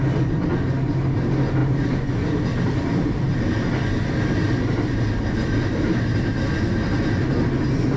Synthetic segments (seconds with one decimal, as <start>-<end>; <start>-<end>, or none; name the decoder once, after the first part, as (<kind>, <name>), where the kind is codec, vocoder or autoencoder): none